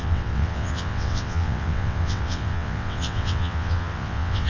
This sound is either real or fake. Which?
fake